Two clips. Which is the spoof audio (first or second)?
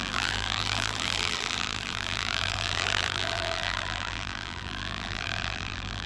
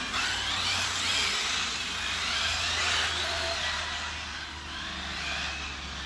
first